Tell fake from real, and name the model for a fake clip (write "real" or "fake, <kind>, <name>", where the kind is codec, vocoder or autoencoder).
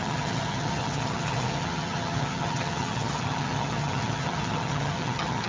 fake, vocoder, HiFi-GAN